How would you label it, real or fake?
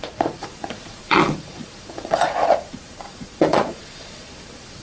fake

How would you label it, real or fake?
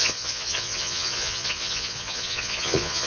fake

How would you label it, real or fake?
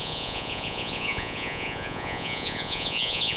fake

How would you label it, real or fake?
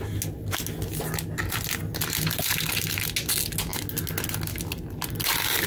real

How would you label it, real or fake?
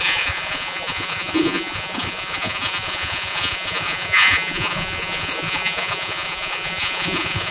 fake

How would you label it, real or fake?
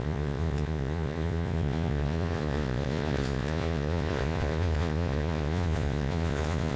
fake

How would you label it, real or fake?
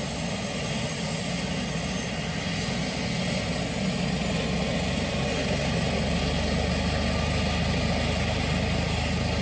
real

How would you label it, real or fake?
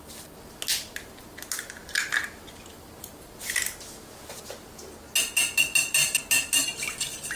real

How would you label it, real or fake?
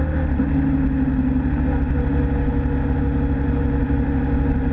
real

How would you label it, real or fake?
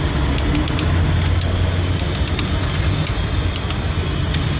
real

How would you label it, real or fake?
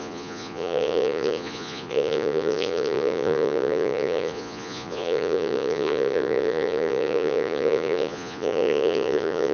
fake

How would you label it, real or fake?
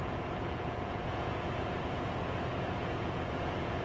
fake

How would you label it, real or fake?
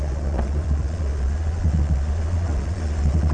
fake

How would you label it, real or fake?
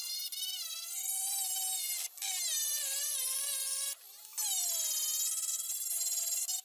real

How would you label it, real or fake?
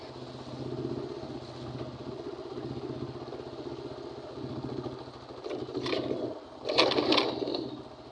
real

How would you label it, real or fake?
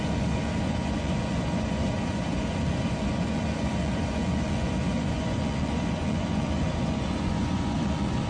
fake